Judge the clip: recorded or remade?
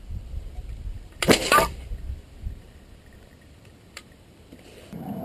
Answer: remade